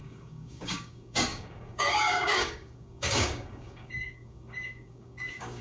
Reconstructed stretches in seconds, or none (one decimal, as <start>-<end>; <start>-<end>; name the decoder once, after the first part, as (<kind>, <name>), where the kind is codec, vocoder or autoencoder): 0.0-5.6 (codec, DAC)